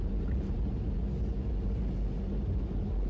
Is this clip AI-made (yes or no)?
no